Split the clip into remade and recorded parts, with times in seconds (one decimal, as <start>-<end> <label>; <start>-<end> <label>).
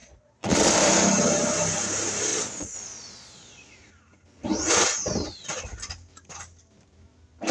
0.0-0.7 remade; 0.7-2.3 recorded; 2.3-3.9 remade; 3.9-7.5 recorded